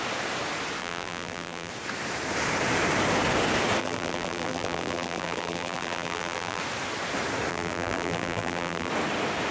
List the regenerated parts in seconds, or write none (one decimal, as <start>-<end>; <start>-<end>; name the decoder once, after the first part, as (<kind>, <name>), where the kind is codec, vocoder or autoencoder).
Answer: 0.8-1.7 (vocoder, BigVGAN v2); 3.8-6.6; 7.5-8.9